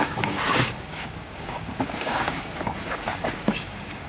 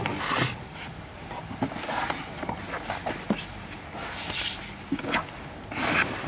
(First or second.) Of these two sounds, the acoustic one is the second